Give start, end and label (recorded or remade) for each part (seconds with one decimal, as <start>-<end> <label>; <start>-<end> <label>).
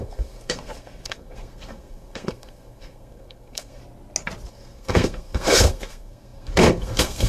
0.0-3.8 remade; 3.8-4.5 recorded; 4.5-7.3 remade